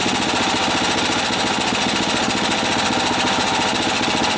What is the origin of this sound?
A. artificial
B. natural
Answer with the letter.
B